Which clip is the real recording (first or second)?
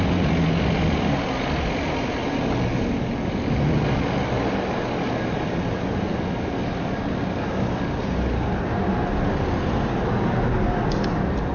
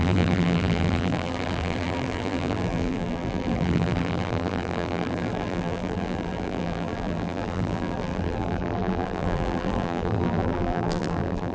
first